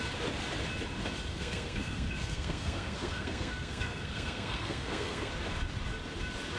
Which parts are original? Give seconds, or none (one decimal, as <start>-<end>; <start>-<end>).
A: 0.0-1.3; 5.3-6.6